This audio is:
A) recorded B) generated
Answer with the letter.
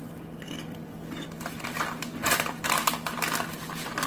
A